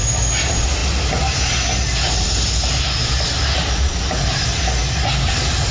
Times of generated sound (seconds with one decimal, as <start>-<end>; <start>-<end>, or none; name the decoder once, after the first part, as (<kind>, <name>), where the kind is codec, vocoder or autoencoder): none